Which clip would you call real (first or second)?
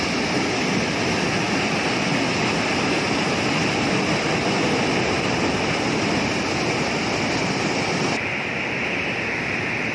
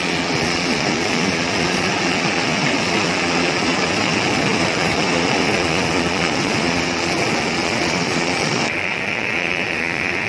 first